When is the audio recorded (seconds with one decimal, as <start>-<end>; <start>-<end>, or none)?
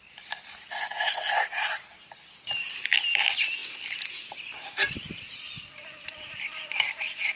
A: 0.0-7.4